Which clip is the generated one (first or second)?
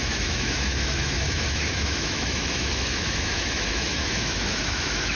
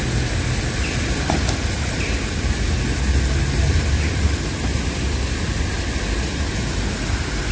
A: first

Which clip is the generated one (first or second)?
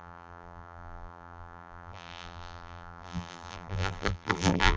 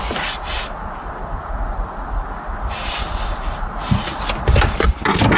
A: first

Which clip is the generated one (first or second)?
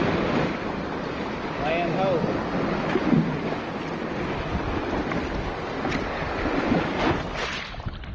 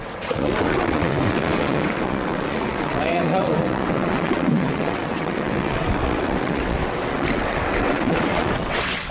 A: second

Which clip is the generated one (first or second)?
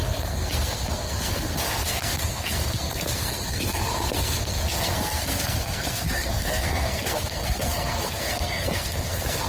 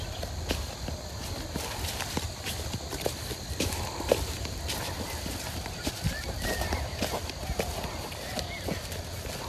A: first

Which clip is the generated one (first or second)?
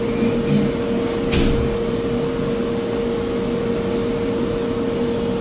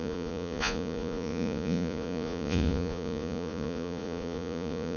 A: second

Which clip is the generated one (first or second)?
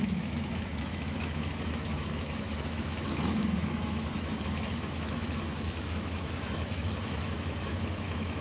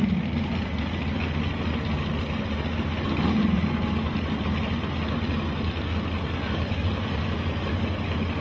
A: first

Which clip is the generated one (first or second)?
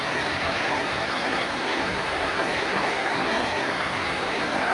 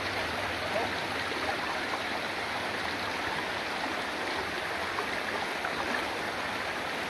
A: first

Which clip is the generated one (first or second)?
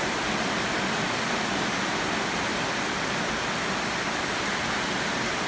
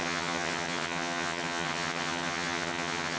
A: second